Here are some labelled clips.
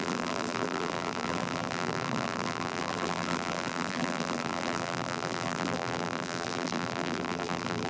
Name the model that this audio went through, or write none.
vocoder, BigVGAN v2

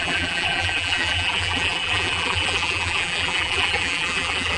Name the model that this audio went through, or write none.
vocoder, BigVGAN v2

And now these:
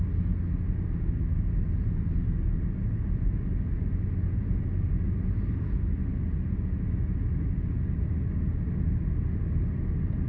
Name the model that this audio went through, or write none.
none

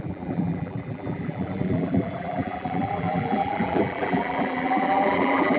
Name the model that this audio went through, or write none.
vocoder, BigVGAN v2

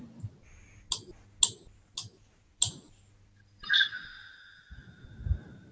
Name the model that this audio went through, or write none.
none